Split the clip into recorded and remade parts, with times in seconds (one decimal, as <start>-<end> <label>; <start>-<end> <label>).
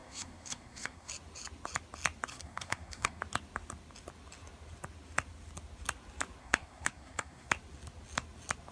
0.0-1.1 remade; 1.1-2.3 recorded; 2.3-3.2 remade; 3.2-6.4 recorded; 6.4-7.5 remade; 7.5-8.7 recorded